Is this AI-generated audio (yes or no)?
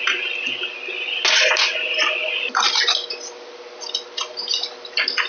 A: no